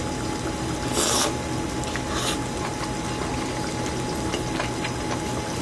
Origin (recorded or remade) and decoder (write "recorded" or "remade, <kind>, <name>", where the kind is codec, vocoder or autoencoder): recorded